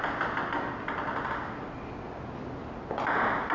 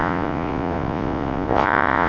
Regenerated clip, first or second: second